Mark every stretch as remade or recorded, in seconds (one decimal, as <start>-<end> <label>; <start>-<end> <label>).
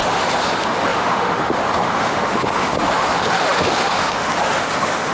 0.0-5.1 remade